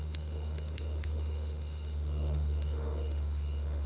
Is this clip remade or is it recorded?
remade